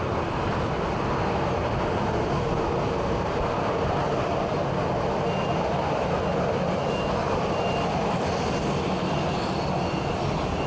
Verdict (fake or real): real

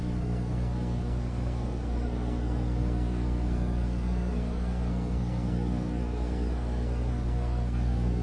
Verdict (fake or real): fake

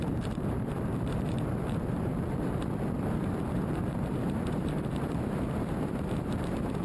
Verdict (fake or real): fake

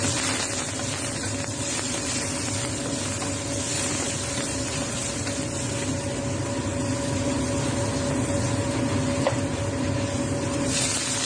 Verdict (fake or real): real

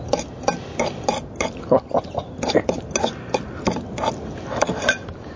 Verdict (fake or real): real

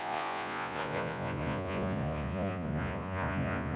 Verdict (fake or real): fake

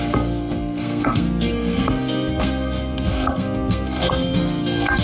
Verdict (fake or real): fake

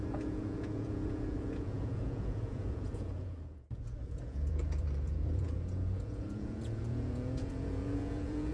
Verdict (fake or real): fake